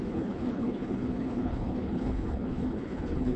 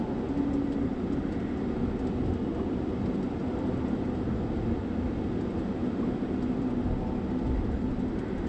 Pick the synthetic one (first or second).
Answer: first